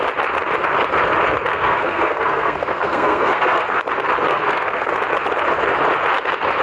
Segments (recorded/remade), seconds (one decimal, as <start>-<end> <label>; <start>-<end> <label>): 0.0-1.5 recorded; 1.5-3.8 remade; 3.8-4.3 recorded; 4.3-4.9 remade; 4.9-6.6 recorded